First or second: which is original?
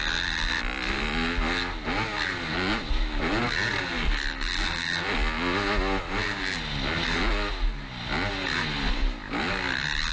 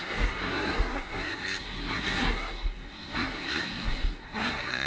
first